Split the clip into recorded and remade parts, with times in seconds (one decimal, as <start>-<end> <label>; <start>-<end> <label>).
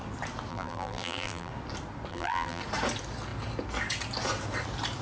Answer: 0.0-0.5 recorded; 0.5-1.5 remade; 1.5-2.1 recorded; 2.1-2.6 remade; 2.6-5.0 recorded